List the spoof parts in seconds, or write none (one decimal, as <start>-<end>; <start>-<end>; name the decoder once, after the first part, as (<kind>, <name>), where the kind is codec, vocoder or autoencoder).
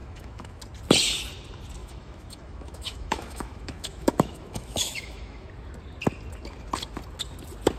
0.0-0.6 (autoencoder, DAC-VAE); 1.8-5.5